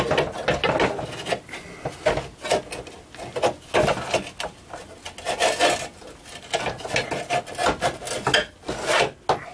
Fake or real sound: real